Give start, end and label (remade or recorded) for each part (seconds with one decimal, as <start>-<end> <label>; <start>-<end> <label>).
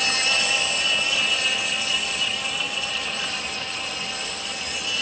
0.0-1.9 recorded; 1.9-3.9 remade; 3.9-5.0 recorded